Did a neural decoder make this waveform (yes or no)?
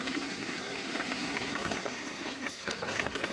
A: yes